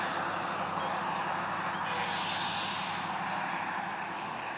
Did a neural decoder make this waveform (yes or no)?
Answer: no